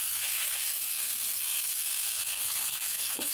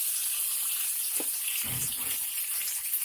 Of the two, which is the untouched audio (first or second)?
second